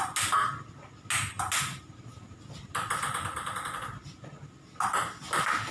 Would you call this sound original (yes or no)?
yes